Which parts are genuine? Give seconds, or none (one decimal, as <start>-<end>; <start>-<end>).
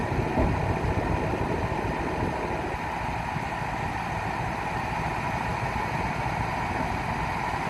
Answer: 0.0-7.7